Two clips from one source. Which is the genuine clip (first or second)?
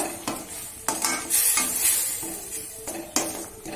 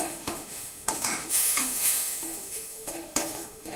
first